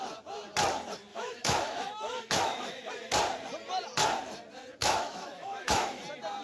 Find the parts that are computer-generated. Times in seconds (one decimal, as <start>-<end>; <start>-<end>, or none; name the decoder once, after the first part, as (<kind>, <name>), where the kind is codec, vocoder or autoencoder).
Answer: 1.1-2.9 (autoencoder, DAC-VAE); 4.8-6.0